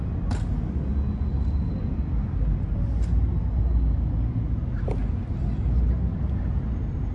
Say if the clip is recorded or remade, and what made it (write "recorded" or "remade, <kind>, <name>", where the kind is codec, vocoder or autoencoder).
recorded